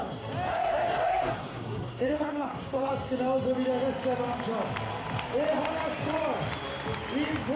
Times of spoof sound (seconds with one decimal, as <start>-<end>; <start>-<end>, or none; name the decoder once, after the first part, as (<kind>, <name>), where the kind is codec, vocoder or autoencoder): 0.5-2.9 (codec, SNAC)